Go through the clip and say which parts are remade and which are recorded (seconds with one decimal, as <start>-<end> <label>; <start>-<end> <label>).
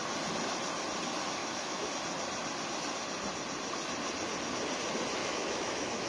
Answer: 0.0-1.4 recorded; 1.4-1.9 remade; 1.9-5.2 recorded; 5.2-6.1 remade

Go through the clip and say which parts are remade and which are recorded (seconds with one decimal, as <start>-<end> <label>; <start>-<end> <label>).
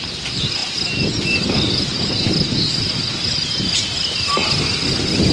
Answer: 0.0-5.3 recorded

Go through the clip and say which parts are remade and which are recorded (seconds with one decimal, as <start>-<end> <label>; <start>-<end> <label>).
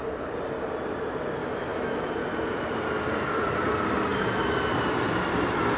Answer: 0.0-1.4 recorded; 1.4-2.1 remade; 2.1-5.8 recorded